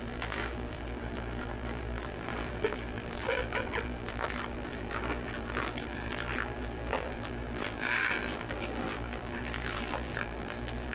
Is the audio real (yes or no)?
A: no